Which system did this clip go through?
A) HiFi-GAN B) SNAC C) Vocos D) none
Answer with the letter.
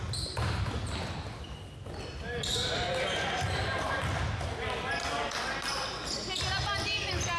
D